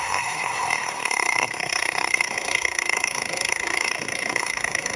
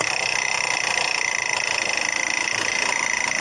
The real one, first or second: second